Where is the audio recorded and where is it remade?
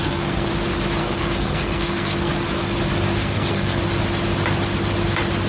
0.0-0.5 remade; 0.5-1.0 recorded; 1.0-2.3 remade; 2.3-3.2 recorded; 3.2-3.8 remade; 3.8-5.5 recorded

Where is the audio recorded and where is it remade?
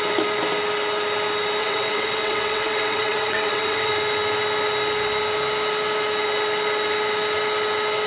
0.0-1.6 recorded; 1.6-3.9 remade; 3.9-8.1 recorded